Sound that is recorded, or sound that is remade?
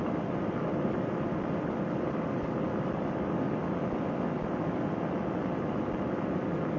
recorded